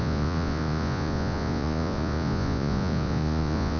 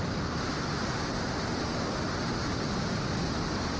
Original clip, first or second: second